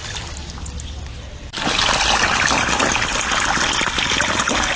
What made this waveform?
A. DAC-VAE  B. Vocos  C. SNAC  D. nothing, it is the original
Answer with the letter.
D